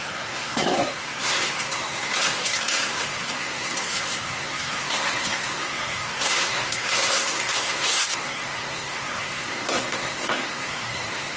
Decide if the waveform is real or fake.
fake